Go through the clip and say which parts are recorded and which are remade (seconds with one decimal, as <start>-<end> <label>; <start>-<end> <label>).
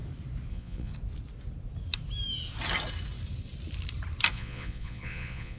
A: 0.0-0.5 recorded; 0.5-0.9 remade; 0.9-4.3 recorded; 4.3-5.6 remade